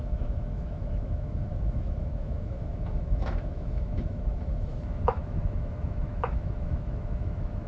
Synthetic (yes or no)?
yes